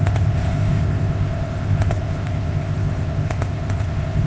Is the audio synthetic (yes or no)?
yes